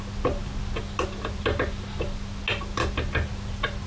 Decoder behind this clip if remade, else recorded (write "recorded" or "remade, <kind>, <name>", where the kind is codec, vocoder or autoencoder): recorded